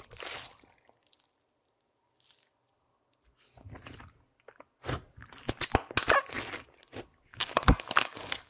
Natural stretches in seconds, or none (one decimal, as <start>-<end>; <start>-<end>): 0.0-7.3